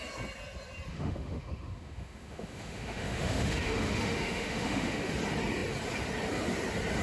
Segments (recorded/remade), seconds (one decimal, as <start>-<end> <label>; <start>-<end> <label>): 0.0-0.9 recorded; 0.9-5.1 remade; 5.1-7.0 recorded